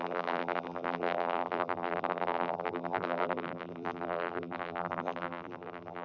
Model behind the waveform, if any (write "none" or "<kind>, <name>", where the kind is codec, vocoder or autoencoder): vocoder, BigVGAN v2